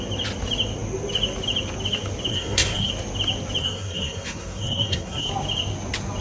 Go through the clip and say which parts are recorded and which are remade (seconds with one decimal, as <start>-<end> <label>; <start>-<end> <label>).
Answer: 0.0-2.3 recorded; 2.3-2.9 remade; 2.9-3.6 recorded; 3.6-5.3 remade; 5.3-6.2 recorded